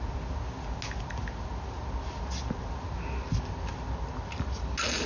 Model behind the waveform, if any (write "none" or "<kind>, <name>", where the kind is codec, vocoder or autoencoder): none